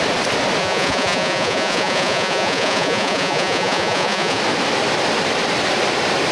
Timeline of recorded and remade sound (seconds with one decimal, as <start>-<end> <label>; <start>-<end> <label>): 0.0-0.6 recorded; 0.6-4.4 remade; 4.4-6.3 recorded